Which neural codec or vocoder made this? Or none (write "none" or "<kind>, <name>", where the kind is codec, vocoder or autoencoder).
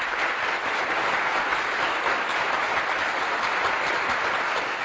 none